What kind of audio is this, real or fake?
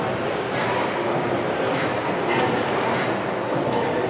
real